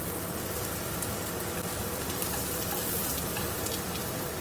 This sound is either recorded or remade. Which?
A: recorded